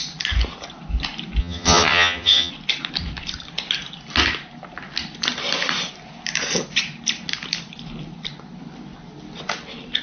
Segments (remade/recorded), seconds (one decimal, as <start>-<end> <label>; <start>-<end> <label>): 0.0-1.4 recorded; 1.4-2.5 remade; 2.5-10.0 recorded